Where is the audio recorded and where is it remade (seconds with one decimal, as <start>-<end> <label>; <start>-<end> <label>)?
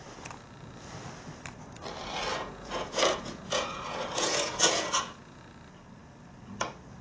0.0-2.3 recorded; 2.3-5.4 remade; 5.4-7.0 recorded